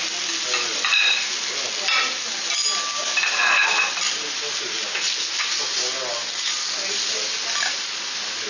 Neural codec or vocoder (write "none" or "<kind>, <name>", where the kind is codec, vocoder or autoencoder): none